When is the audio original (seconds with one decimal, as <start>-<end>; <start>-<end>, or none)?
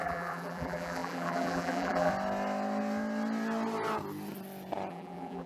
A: 2.1-4.9